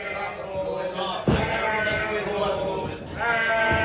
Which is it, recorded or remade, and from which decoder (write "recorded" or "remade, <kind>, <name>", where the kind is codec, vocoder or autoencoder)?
recorded